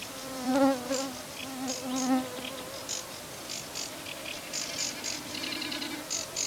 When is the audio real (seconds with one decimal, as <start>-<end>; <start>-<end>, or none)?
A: 0.5-6.5